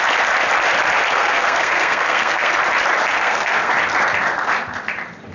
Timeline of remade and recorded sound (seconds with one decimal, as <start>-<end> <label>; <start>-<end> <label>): 0.0-1.1 recorded; 1.1-2.5 remade; 2.5-3.1 recorded; 3.1-3.7 remade; 3.7-5.3 recorded